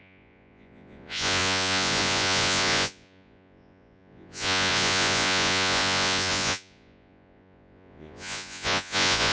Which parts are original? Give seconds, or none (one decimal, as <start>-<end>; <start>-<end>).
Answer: none